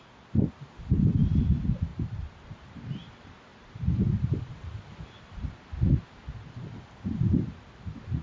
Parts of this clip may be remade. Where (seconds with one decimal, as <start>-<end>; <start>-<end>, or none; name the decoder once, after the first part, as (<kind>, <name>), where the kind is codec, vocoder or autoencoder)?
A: 1.9-2.9 (vocoder, BigVGAN v2); 3.5-5.7